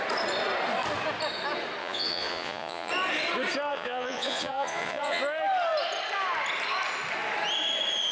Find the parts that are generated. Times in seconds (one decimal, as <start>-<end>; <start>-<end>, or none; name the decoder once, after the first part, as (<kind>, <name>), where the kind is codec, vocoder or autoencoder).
1.8-2.9 (vocoder, Vocos); 3.7-5.2